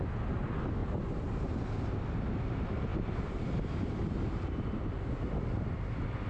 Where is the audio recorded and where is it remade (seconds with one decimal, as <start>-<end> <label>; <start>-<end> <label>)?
0.0-0.8 recorded; 0.8-1.6 remade; 1.6-2.9 recorded; 2.9-4.8 remade; 4.8-6.3 recorded